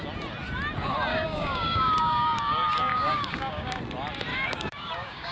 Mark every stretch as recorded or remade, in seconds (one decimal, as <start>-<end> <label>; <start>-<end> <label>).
0.0-1.1 recorded; 1.1-2.4 remade; 2.4-2.9 recorded; 2.9-3.8 remade; 3.8-4.3 recorded; 4.3-5.3 remade